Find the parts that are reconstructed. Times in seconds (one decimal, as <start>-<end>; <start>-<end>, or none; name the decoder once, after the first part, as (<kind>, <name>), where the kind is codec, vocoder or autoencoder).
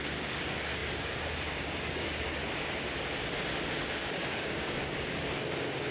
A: 0.0-2.4 (codec, DAC); 3.8-5.9